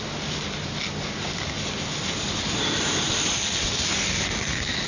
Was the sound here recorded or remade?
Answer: recorded